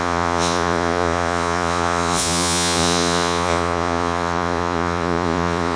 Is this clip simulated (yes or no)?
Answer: yes